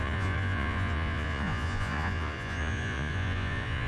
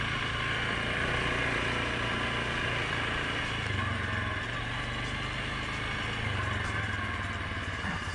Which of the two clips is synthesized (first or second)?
first